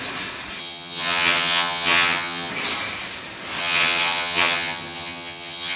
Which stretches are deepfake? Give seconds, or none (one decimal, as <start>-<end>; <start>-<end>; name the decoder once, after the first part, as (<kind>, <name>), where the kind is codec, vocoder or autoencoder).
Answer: 0.6-2.5 (vocoder, HiFi-GAN); 3.6-5.8